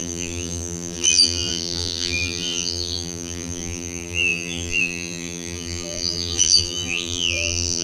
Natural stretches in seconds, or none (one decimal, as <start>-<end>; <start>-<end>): none